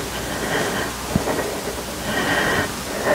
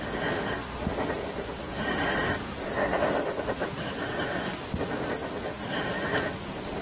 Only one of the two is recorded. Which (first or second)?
first